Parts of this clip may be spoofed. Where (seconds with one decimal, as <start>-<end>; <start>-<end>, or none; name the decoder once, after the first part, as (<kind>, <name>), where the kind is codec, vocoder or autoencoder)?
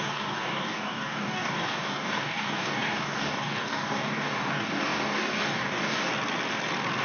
0.0-6.1 (codec, DAC)